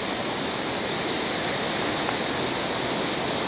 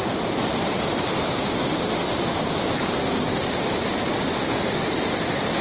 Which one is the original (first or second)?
first